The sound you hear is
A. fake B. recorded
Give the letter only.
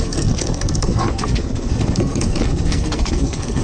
A